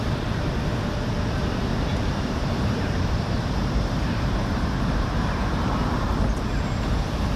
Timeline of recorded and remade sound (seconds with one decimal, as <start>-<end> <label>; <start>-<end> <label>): 0.0-1.9 recorded; 1.9-6.1 remade; 6.1-7.4 recorded